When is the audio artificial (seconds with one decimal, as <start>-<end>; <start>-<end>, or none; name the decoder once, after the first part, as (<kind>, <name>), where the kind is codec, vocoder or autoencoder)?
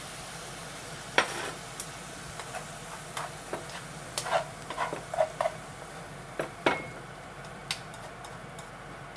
0.0-7.6 (vocoder, BigVGAN v2); 8.7-9.2